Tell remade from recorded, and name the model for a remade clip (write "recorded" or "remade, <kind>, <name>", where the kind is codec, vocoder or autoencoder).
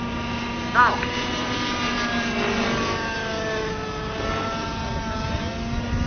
recorded